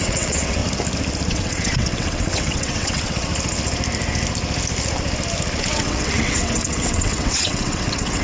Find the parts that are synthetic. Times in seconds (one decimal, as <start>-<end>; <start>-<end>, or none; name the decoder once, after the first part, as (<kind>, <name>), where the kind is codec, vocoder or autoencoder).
0.0-0.6 (vocoder, WaveNeXt); 1.3-3.3; 5.6-8.2